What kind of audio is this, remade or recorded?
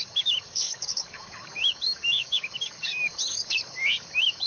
remade